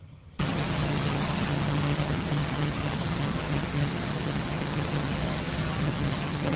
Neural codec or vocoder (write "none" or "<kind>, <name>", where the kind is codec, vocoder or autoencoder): vocoder, HiFi-GAN